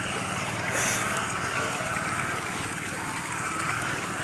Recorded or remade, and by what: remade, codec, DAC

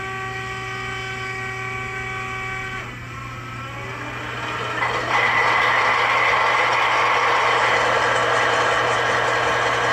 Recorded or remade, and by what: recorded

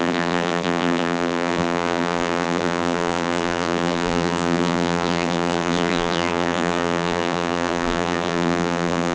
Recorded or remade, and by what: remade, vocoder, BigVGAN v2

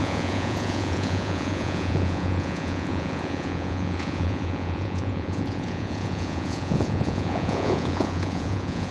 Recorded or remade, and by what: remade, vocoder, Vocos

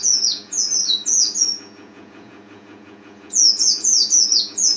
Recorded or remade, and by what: remade, vocoder, Vocos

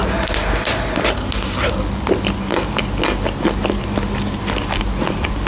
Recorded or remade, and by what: recorded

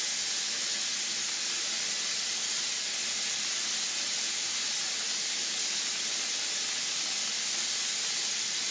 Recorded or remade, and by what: recorded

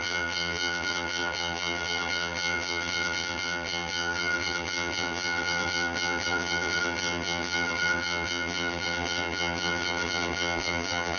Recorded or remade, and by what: remade, vocoder, BigVGAN v2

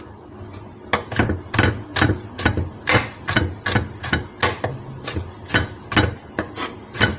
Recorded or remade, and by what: recorded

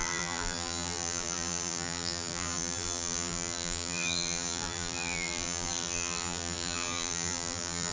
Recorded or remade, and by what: remade, vocoder, BigVGAN v2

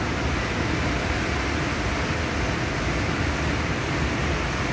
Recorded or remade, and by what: recorded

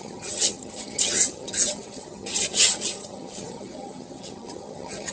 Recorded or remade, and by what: remade, vocoder, HiFi-GAN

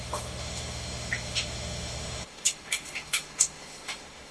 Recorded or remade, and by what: remade, autoencoder, DAC-VAE